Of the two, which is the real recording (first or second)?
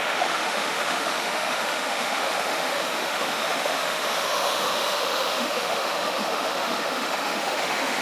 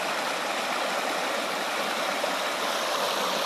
second